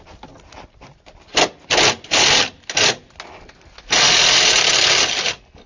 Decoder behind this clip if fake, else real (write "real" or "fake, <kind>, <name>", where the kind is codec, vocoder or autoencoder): real